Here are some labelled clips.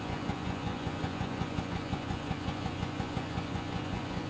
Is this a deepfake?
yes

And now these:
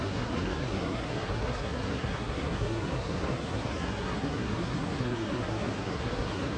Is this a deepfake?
yes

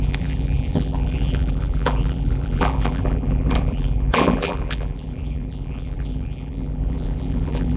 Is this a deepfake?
yes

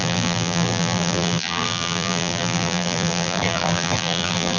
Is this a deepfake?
yes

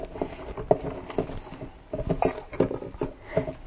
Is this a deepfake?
no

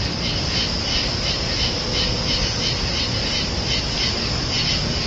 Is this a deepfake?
no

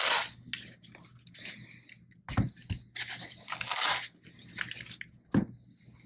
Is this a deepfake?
no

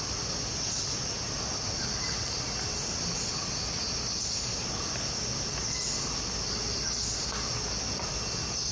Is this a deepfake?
no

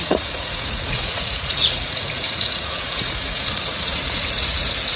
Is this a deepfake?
yes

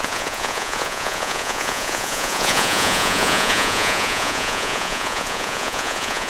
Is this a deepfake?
yes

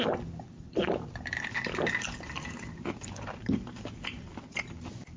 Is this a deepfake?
no